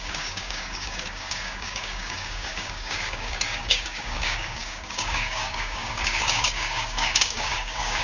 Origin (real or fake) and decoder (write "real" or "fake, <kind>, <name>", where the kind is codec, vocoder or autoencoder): fake, codec, DAC